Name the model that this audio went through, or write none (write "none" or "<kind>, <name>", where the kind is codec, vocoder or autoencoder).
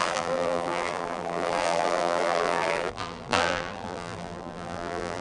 vocoder, BigVGAN v2